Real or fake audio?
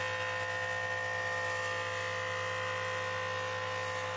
real